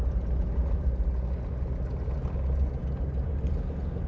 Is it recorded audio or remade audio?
recorded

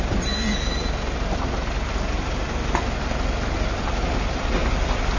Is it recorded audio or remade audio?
recorded